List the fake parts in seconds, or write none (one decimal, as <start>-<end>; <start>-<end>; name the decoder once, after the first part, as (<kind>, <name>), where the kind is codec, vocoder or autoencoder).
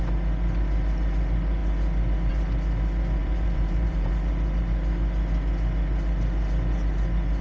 3.2-4.1 (vocoder, BigVGAN v2)